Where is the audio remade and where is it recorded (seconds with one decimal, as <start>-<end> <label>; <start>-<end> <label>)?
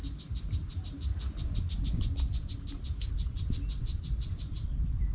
0.0-3.9 recorded; 3.9-4.5 remade; 4.5-5.1 recorded